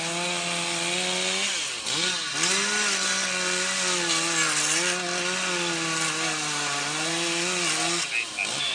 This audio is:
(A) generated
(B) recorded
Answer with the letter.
B